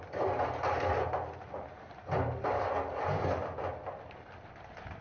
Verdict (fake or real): real